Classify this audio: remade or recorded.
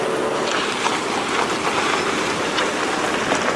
recorded